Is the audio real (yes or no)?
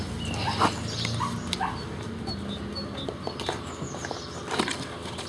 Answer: yes